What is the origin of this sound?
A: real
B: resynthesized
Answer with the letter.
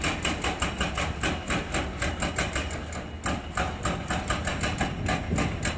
A